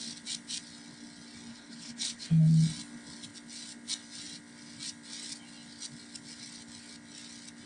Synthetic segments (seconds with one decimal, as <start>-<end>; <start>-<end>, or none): 1.5-2.3